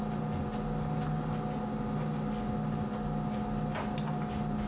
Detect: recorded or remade recorded